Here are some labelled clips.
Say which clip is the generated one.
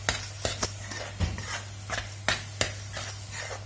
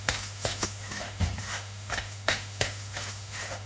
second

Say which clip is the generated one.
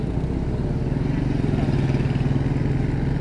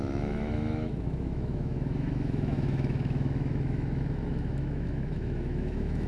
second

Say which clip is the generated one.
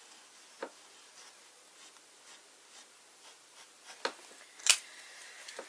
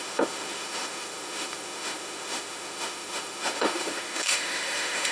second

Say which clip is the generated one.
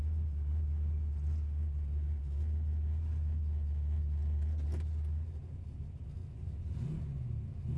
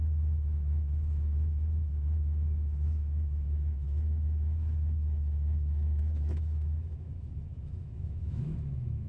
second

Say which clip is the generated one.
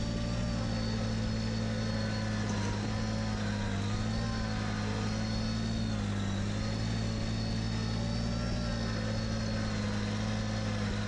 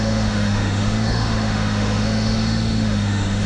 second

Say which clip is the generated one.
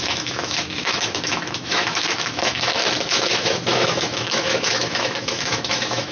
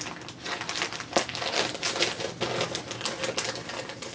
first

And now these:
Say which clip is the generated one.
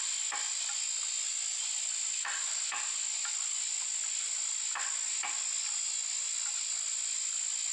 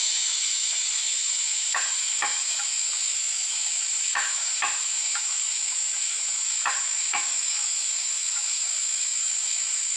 second